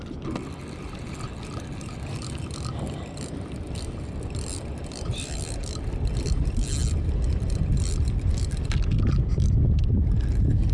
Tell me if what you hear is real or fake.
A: real